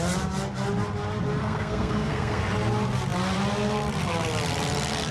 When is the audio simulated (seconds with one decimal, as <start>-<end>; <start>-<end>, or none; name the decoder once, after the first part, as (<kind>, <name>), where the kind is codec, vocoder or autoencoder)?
1.4-2.4 (codec, SNAC)